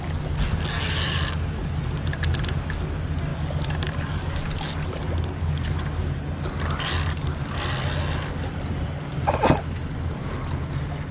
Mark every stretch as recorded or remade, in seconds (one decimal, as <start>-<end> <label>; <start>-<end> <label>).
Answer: 0.0-11.1 recorded